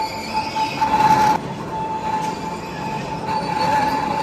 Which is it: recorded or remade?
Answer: recorded